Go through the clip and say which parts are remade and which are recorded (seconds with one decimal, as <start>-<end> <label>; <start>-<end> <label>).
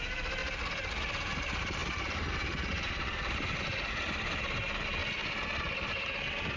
0.0-0.4 remade; 0.4-1.3 recorded; 1.3-5.0 remade; 5.0-5.6 recorded; 5.6-6.6 remade